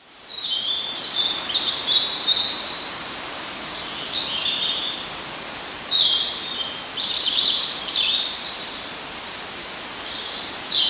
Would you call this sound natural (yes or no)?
no